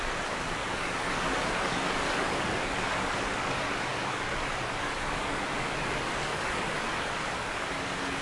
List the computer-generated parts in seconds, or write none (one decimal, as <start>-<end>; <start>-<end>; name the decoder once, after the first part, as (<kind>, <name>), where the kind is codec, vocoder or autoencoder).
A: 0.0-8.2 (codec, DAC)